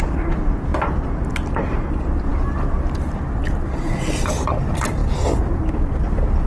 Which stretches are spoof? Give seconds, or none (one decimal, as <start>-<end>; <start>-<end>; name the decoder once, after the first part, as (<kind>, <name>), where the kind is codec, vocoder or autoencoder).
0.0-0.7 (vocoder, BigVGAN v2); 1.3-6.5